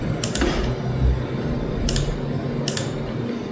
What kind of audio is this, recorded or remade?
recorded